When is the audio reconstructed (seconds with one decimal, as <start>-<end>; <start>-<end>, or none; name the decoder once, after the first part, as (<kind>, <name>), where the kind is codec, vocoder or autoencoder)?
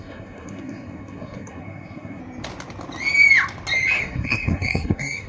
0.0-2.2 (codec, SNAC); 4.0-5.3